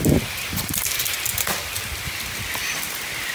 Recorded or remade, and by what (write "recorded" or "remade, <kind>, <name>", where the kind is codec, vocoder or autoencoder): recorded